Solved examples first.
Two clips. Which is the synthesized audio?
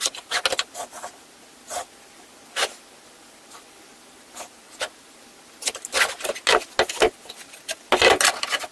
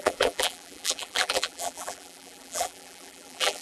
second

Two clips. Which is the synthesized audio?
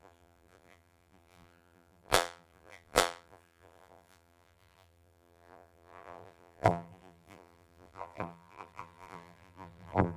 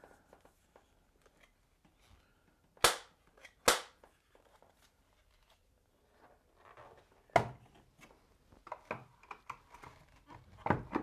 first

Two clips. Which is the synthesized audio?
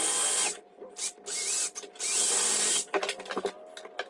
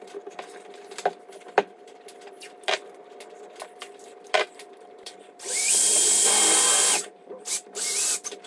second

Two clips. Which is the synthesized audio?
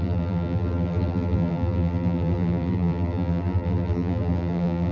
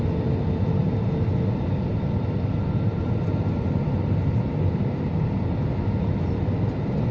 first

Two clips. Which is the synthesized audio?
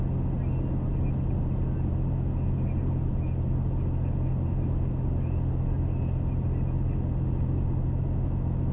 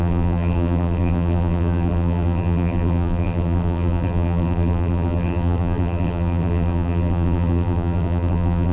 second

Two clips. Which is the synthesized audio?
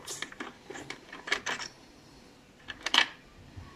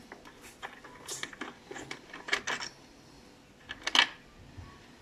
first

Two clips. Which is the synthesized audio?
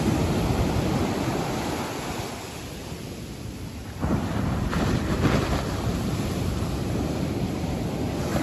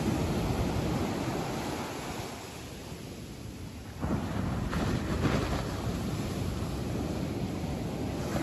first